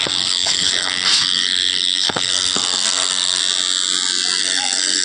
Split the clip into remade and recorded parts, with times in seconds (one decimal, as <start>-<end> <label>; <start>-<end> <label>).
0.0-3.4 remade; 3.4-4.4 recorded; 4.4-5.0 remade